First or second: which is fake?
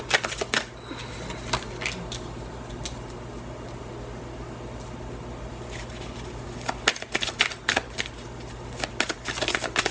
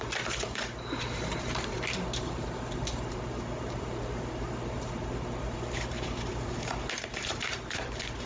second